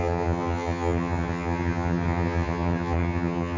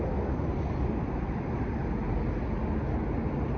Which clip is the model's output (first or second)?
first